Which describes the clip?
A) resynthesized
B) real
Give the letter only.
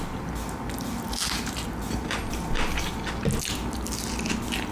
B